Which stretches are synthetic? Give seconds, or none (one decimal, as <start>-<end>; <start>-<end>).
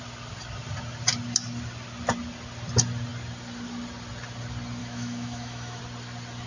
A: 4.8-5.8